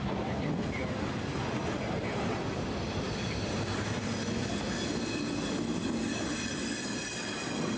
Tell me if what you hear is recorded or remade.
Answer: recorded